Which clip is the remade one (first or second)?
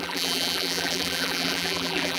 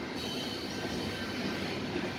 first